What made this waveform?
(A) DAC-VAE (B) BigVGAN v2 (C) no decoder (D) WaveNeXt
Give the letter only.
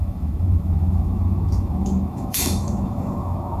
A